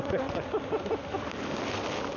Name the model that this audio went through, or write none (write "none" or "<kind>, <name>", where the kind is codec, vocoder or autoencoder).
none